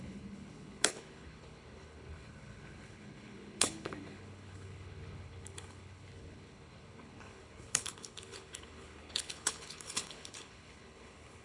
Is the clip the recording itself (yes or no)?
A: no